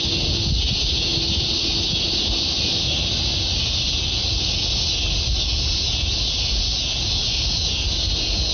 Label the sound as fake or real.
real